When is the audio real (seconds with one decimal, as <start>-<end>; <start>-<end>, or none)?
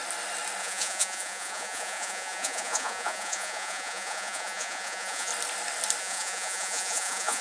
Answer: 0.0-0.6; 5.3-6.0